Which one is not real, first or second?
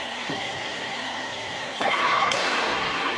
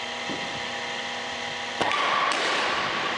first